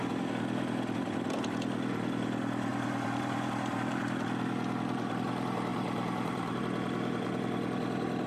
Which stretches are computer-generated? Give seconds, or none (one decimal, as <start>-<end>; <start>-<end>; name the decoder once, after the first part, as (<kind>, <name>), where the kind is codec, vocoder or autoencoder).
5.7-6.6 (vocoder, BigVGAN v2)